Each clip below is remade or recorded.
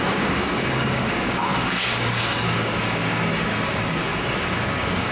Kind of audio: remade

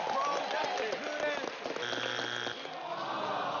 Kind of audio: recorded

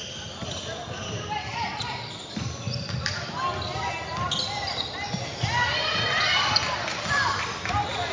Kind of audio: recorded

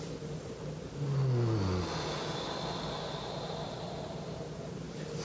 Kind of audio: recorded